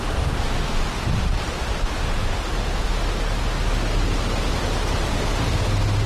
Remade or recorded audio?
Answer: recorded